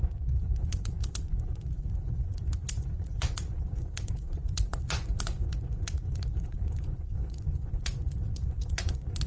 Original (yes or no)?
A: no